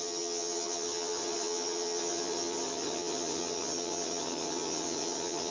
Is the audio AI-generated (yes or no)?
yes